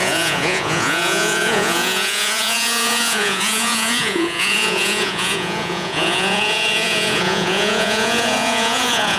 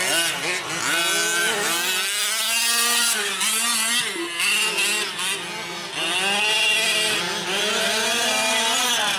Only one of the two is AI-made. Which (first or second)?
first